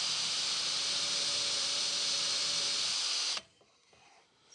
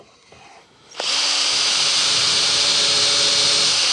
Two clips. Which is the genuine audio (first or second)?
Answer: second